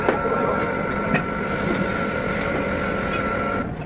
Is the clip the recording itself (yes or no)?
yes